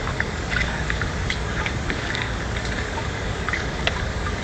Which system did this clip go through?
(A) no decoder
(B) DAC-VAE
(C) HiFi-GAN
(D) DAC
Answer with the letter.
D